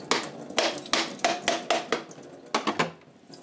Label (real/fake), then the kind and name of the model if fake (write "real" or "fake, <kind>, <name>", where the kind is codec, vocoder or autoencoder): real